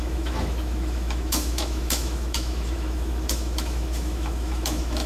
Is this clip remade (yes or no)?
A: yes